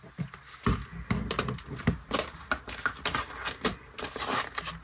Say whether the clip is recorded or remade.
recorded